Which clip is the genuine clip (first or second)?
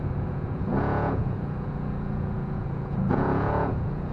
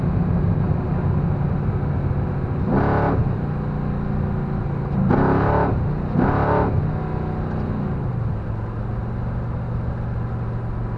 second